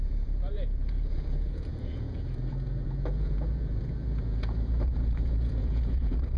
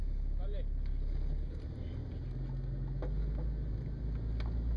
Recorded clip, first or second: second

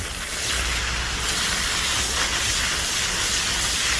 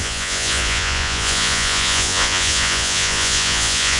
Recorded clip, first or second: first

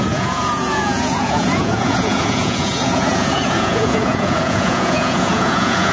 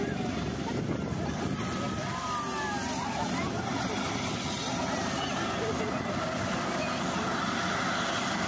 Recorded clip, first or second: second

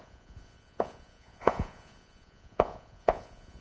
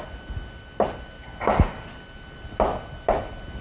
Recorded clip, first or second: second